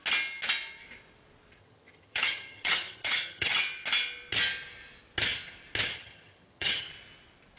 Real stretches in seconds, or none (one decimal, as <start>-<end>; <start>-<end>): 0.0-1.6; 3.6-5.9; 6.9-7.6